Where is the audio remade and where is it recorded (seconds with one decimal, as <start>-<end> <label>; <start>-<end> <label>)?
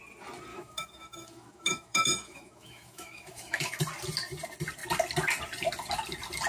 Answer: 0.0-0.5 recorded; 0.5-3.8 remade; 3.8-6.5 recorded